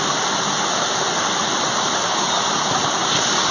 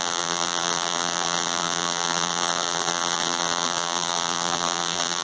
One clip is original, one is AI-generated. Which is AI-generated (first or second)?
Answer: second